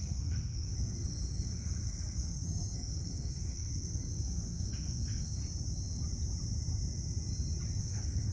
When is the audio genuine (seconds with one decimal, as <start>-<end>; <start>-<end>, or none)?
5.4-7.8

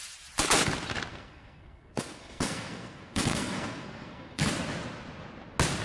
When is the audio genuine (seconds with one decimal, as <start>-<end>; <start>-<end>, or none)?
0.0-1.1; 4.5-5.8